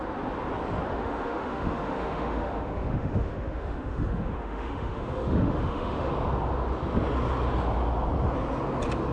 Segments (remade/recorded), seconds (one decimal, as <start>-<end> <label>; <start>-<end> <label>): 0.0-0.9 recorded; 0.9-6.1 remade; 6.1-9.1 recorded